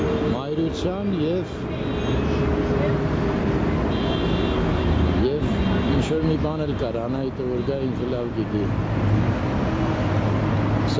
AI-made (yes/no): no